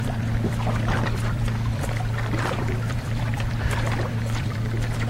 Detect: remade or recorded remade